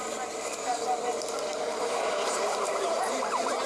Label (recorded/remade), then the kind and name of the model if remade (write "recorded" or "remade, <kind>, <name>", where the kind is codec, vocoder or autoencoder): remade, vocoder, BigVGAN v2